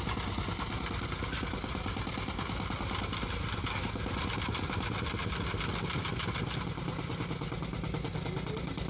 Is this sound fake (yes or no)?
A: no